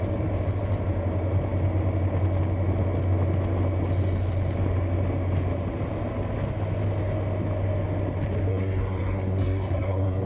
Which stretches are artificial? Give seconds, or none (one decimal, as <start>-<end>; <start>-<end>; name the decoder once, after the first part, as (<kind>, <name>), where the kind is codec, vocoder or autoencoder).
8.5-10.3 (codec, SNAC)